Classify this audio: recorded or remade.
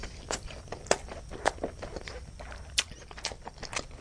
recorded